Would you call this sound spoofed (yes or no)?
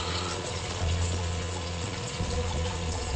yes